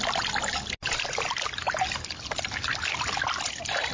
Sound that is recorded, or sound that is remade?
recorded